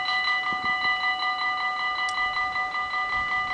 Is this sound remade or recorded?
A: recorded